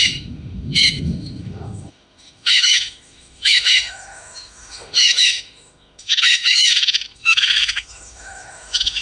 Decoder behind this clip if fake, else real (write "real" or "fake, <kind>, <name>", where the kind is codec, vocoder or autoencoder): fake, autoencoder, DAC-VAE